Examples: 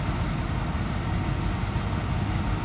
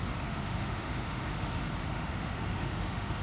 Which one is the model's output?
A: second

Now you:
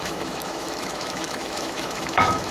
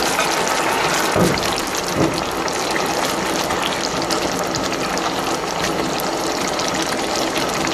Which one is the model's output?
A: first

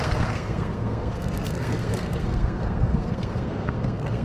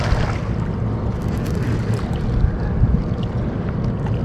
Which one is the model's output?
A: first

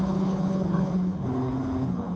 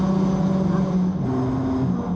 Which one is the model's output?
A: first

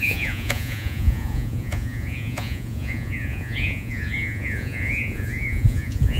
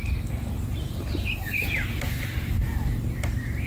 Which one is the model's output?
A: first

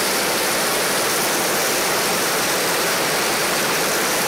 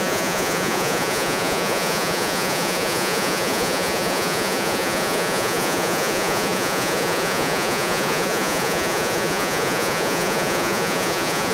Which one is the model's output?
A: second